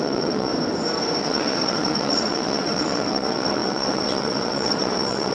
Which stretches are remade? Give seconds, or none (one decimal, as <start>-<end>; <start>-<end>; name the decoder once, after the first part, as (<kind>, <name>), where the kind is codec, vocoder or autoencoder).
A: 0.0-0.5 (vocoder, WaveNeXt); 1.2-5.3